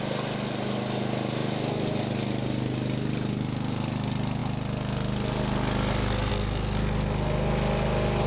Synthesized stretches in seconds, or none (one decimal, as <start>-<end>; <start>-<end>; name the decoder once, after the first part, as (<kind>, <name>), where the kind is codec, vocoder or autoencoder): none